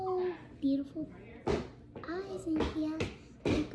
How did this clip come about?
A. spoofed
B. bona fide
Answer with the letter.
B